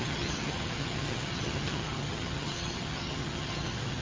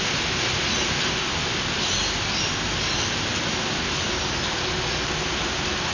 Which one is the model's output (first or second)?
first